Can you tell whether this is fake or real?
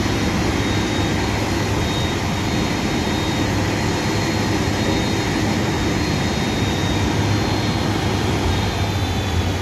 real